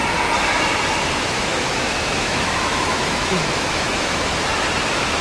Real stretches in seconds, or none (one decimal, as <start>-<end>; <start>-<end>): 0.0-1.1; 4.3-4.8